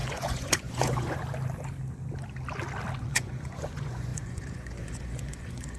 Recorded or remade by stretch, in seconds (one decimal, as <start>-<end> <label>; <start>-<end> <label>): 0.0-1.2 remade; 1.2-3.0 recorded; 3.0-5.8 remade